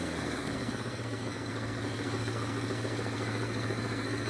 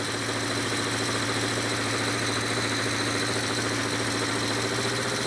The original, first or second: second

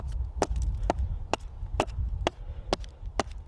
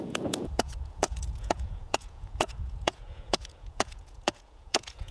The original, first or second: first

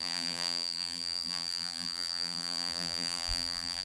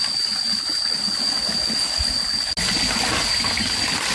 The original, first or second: second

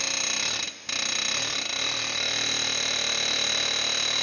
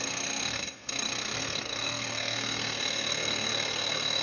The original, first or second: first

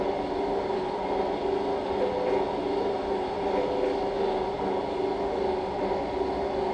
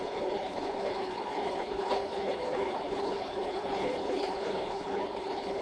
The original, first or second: first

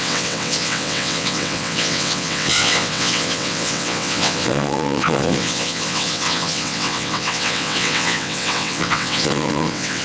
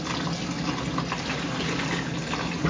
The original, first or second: second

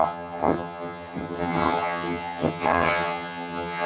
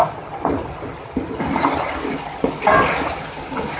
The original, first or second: second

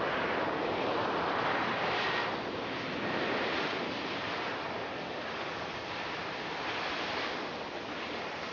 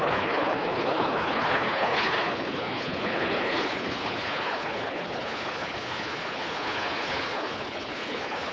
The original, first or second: first